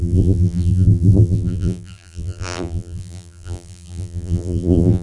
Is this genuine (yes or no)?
no